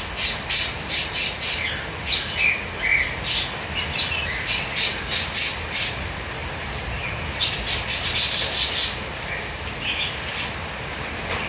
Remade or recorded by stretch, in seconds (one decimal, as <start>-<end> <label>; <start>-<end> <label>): 0.0-11.5 recorded